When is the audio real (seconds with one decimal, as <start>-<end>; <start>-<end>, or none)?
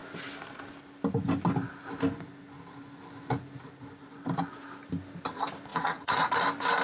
0.0-5.7; 6.3-6.8